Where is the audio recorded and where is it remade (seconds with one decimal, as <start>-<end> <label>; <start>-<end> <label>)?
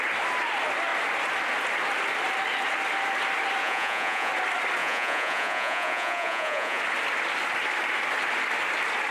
0.0-3.6 recorded; 3.6-4.3 remade; 4.3-4.8 recorded; 4.8-6.8 remade; 6.8-9.1 recorded